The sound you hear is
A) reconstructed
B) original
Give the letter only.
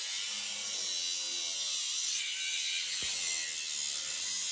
B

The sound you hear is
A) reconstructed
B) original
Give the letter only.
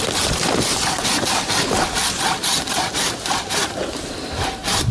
B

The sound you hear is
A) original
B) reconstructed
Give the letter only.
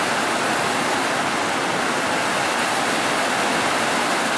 A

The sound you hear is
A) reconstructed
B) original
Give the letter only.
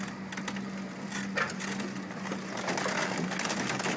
B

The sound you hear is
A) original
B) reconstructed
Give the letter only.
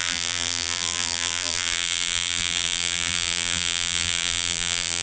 B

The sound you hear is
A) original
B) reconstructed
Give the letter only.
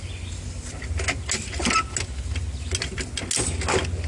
A